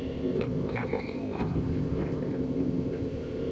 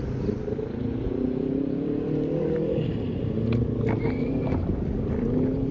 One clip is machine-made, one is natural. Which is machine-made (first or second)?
first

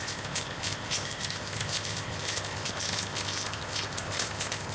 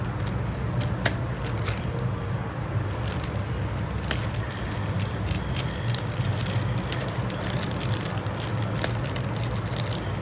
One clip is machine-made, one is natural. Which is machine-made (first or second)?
first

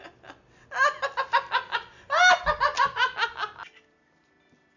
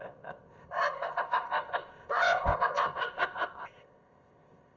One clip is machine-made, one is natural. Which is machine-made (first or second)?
second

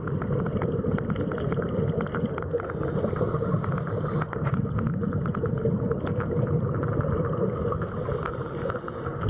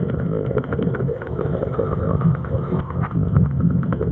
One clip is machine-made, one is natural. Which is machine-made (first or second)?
second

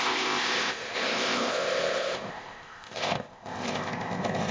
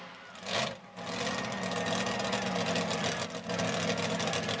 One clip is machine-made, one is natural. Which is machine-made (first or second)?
first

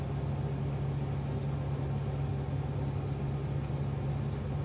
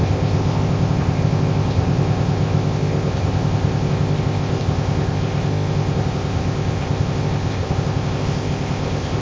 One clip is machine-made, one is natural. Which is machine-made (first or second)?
second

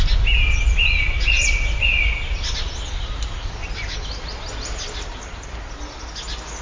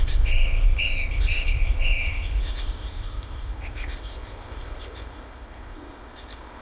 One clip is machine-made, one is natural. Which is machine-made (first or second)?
second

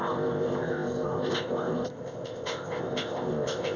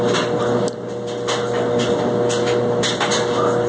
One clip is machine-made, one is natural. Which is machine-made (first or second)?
first